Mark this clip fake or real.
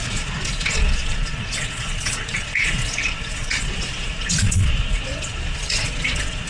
fake